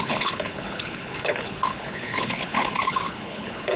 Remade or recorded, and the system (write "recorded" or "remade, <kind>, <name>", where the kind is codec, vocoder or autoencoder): remade, codec, HILCodec